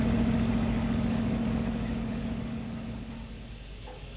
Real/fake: fake